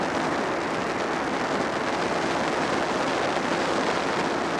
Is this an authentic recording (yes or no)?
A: yes